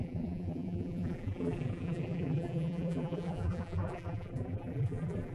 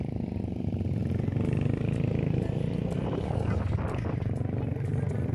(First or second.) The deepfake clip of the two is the first